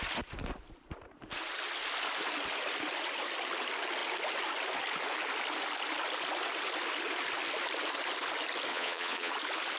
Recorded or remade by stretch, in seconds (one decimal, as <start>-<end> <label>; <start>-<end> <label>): 0.0-8.7 recorded; 8.7-9.3 remade; 9.3-9.8 recorded